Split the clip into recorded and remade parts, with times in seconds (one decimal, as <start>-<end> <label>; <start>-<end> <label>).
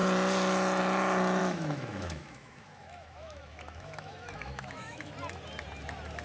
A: 0.0-1.4 recorded; 1.4-5.1 remade; 5.1-6.2 recorded